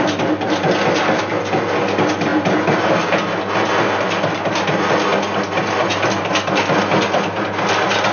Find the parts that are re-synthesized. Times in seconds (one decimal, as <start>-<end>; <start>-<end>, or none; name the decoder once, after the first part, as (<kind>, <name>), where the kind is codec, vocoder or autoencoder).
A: none